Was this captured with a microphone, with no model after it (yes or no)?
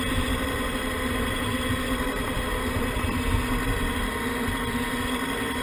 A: yes